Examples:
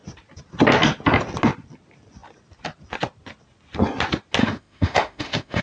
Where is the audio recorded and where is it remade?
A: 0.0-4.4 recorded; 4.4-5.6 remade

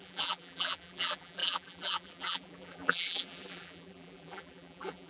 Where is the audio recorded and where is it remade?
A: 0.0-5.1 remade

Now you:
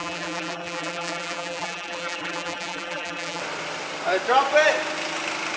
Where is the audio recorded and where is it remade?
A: 0.0-3.4 remade; 3.4-5.6 recorded